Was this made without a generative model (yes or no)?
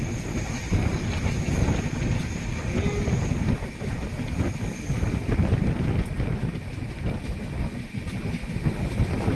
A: yes